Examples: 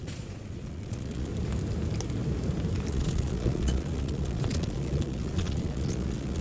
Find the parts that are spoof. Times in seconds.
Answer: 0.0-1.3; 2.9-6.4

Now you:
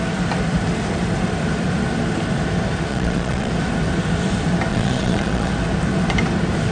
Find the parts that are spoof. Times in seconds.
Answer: 2.9-3.5; 4.7-5.5

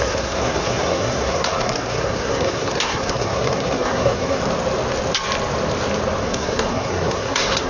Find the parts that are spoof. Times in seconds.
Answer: 0.0-4.4; 6.2-7.7